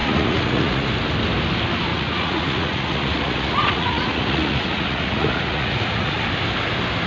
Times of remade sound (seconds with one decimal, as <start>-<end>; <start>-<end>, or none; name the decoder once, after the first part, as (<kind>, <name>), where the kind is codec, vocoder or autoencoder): 0.0-0.9 (vocoder, Vocos); 1.9-6.2